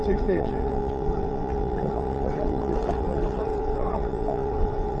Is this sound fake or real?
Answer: fake